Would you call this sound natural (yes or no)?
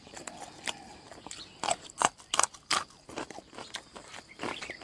no